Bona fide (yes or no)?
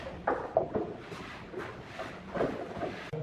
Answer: yes